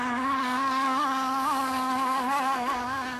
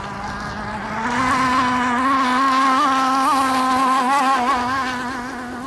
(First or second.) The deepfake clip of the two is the first